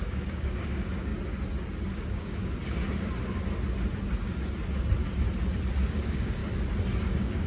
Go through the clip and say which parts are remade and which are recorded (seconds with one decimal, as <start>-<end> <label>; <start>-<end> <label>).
0.0-1.1 remade; 1.1-1.8 recorded; 1.8-2.4 remade; 2.4-5.9 recorded; 5.9-6.4 remade; 6.4-7.0 recorded; 7.0-7.5 remade